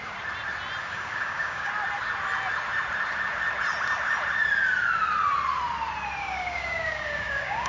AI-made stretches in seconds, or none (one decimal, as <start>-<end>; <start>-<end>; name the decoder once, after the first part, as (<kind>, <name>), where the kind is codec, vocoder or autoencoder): 0.8-1.7 (codec, DAC); 6.2-7.7

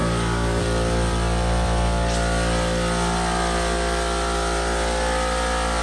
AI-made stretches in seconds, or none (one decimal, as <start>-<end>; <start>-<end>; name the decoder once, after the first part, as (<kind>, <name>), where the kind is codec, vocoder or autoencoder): 0.0-0.6 (codec, DAC)

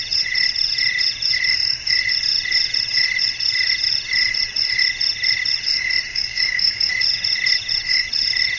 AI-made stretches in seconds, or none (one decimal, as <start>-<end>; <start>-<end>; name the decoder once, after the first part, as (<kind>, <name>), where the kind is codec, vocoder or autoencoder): 6.1-6.9 (codec, DAC)

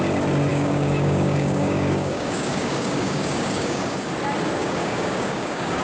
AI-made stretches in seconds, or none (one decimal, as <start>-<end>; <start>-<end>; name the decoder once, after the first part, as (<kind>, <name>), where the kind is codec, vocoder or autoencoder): 0.5-4.0 (codec, DAC); 4.6-5.8

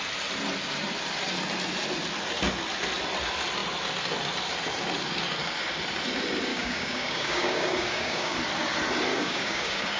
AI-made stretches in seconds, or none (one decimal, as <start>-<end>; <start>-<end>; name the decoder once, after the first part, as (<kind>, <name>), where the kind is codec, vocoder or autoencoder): 6.5-8.4 (codec, DAC); 9.1-10.0

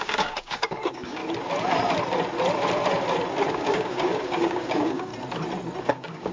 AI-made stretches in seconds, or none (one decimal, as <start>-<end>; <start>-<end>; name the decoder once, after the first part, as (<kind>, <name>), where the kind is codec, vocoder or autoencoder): 0.0-1.2 (codec, DAC); 3.5-5.1; 5.8-6.3